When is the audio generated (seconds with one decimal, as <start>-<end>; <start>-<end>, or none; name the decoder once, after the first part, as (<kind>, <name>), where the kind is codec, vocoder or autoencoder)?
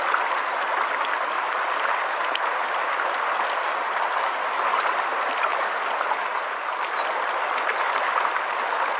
none